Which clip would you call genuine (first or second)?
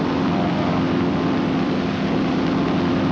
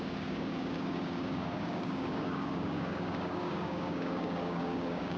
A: first